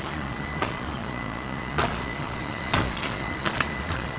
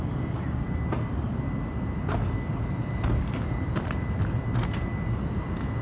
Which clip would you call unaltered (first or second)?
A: second